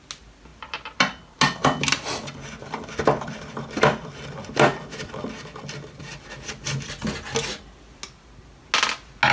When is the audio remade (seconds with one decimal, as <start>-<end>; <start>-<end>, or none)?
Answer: none